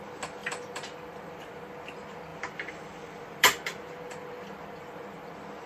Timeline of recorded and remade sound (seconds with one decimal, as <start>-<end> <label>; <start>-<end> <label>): 0.0-0.4 recorded; 0.4-1.5 remade; 1.5-2.3 recorded; 2.3-5.3 remade; 5.3-5.7 recorded